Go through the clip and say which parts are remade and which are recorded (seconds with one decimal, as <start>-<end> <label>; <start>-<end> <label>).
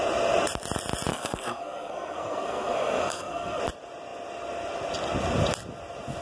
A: 0.0-1.1 recorded; 1.1-3.6 remade; 3.6-6.2 recorded